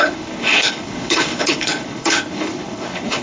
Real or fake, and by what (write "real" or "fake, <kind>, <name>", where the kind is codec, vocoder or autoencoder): fake, codec, HILCodec